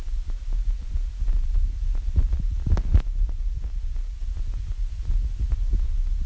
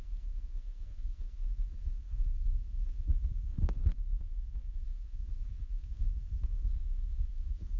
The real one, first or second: first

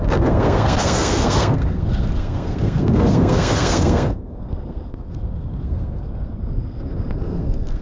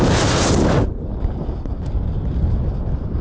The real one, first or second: second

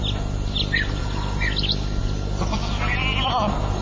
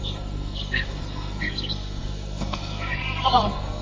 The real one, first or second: first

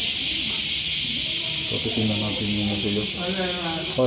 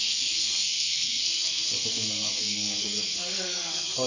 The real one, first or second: first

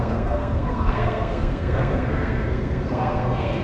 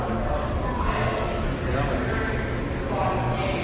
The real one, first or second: second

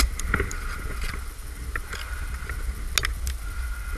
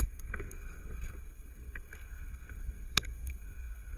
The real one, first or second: first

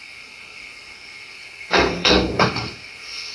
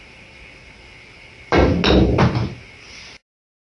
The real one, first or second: second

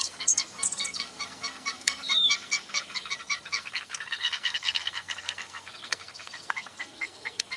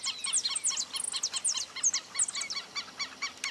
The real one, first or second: second